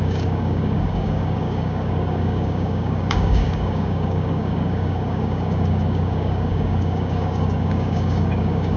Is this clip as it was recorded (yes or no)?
no